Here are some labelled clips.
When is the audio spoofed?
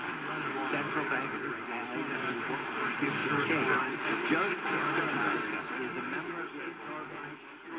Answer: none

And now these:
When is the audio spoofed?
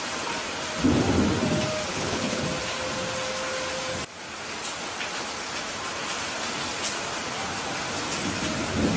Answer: 1.9-2.4 (codec, HILCodec)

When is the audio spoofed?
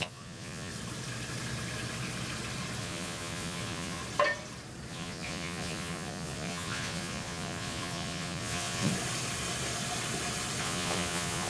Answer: 0.0-0.7 (vocoder, Vocos); 2.8-4.0; 4.9-8.9; 10.6-11.5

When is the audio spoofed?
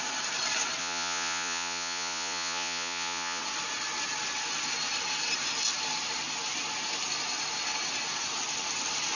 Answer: 0.8-3.4 (vocoder, Vocos)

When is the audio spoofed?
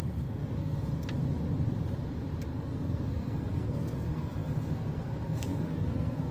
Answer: 0.0-0.9 (codec, SNAC); 2.5-6.3